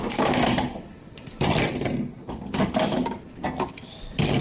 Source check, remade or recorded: recorded